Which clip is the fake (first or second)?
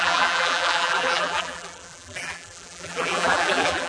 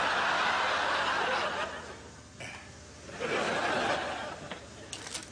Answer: first